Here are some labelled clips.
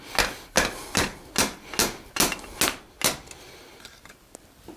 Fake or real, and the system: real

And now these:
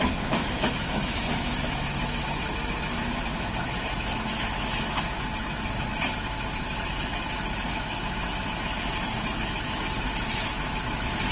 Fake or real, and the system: fake, autoencoder, DAC-VAE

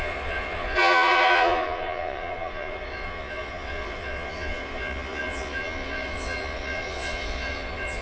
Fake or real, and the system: fake, vocoder, Vocos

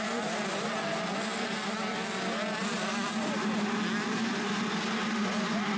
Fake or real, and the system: real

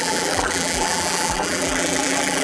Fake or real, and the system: fake, vocoder, BigVGAN v2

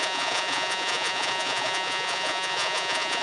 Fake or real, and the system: fake, vocoder, Vocos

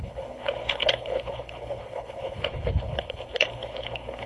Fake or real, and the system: fake, codec, HILCodec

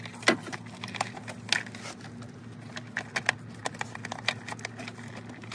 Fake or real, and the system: real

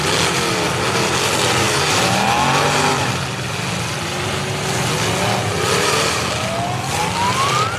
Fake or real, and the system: real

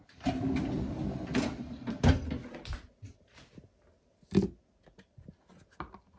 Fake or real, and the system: real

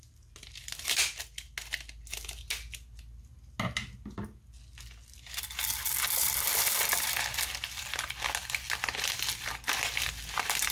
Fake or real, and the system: real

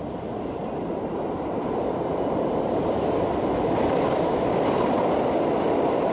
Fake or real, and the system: real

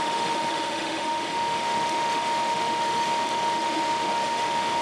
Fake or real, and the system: fake, autoencoder, DAC-VAE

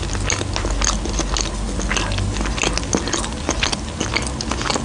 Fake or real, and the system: real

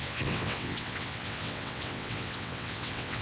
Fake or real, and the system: fake, vocoder, WaveNeXt